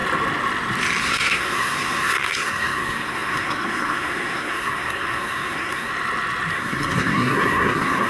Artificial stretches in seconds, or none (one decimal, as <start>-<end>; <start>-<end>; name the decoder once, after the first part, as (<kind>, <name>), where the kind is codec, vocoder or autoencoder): 1.0-5.9 (codec, SNAC); 6.5-8.1